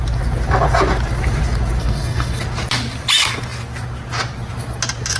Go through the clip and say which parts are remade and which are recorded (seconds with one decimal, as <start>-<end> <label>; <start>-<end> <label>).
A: 0.0-1.8 recorded; 1.8-2.4 remade; 2.4-5.2 recorded